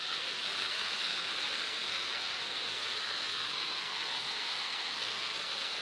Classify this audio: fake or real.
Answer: fake